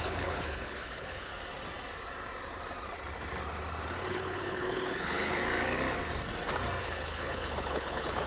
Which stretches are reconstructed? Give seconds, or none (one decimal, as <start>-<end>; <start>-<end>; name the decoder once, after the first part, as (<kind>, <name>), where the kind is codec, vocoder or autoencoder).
0.0-1.3 (codec, HILCodec); 4.1-5.4; 6.8-8.3